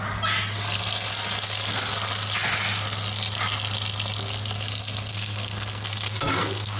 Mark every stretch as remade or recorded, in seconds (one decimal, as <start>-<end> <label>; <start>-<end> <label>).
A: 0.0-5.1 recorded; 5.1-6.8 remade